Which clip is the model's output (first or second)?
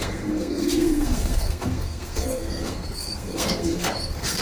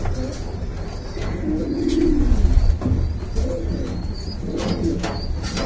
first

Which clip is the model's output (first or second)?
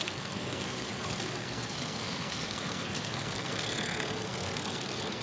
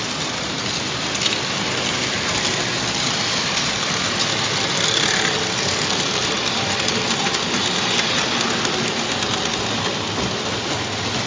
first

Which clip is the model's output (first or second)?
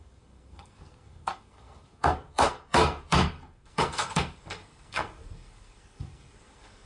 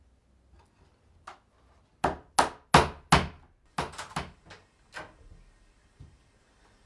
first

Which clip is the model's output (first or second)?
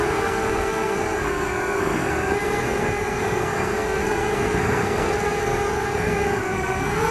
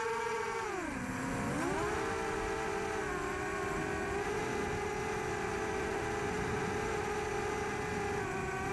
first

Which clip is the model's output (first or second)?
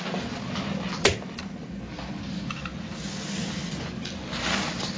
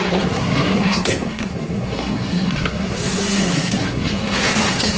second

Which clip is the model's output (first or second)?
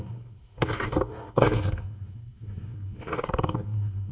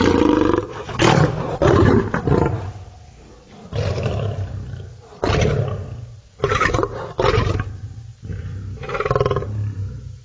first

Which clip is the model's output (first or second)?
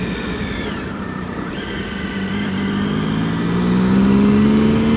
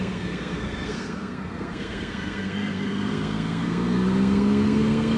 second